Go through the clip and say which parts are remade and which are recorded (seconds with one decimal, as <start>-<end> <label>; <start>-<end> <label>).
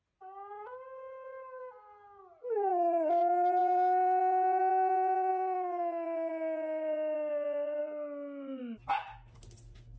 0.0-10.0 recorded